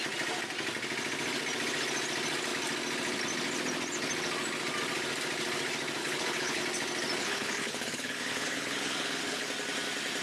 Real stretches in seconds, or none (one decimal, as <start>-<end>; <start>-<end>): 0.0-6.0; 6.6-7.2; 9.5-10.2